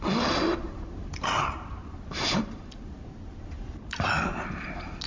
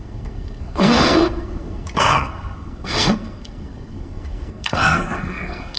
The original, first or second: first